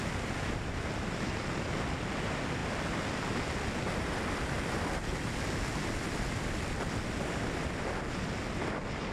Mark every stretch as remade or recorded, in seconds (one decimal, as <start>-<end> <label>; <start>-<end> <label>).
0.0-9.1 recorded